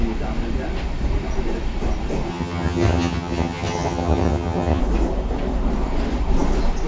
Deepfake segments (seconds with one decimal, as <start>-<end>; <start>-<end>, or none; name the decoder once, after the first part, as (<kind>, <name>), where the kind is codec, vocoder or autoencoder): 2.3-4.8 (vocoder, HiFi-GAN)